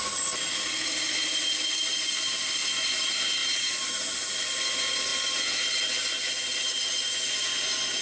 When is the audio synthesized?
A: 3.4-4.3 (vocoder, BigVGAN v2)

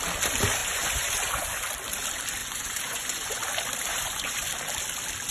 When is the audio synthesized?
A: 0.6-1.6 (vocoder, Vocos); 2.4-3.4; 3.9-4.5